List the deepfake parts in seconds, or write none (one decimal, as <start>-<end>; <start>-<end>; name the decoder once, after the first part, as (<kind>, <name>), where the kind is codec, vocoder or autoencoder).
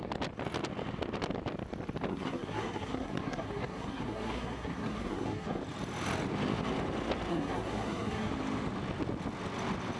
2.1-5.6 (codec, SNAC); 7.3-8.3